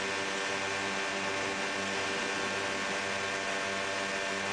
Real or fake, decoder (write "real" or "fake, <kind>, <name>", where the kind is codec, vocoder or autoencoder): real